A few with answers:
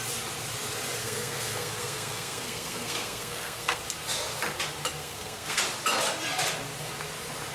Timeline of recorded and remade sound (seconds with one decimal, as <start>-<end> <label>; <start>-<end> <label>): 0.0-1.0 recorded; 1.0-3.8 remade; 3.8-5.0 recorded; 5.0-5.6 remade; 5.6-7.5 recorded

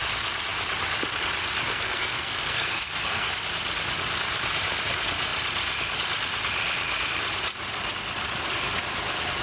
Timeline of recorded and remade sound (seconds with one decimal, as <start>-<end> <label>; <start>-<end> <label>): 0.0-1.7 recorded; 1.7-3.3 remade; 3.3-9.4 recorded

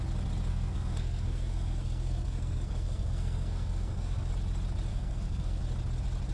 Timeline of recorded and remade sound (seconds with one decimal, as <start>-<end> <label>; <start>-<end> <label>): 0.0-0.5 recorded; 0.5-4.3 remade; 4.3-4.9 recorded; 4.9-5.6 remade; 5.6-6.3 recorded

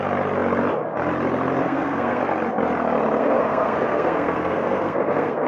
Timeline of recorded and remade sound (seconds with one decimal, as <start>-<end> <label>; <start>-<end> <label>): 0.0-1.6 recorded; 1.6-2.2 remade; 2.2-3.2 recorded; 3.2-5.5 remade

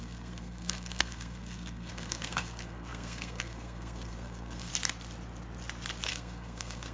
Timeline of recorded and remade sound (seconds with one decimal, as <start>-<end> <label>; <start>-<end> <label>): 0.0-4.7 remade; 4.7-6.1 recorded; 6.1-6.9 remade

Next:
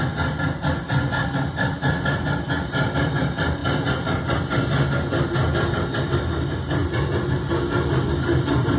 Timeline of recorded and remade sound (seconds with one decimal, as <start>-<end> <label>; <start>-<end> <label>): 0.0-8.8 recorded

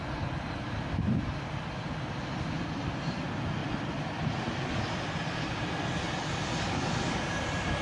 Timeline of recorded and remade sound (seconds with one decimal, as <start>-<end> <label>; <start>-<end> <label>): 0.0-7.8 recorded